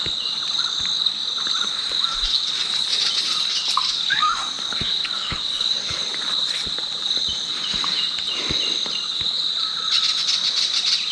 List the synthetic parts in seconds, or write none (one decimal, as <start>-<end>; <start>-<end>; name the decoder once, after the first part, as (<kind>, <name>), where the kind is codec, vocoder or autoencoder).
3.8-6.0 (codec, DAC)